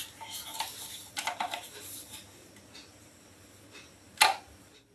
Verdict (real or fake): real